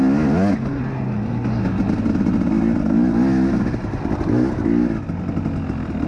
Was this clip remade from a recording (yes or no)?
no